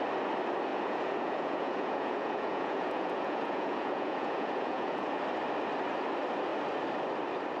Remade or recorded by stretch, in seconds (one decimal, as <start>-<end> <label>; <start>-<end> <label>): 0.0-0.7 recorded; 0.7-5.2 remade; 5.2-7.6 recorded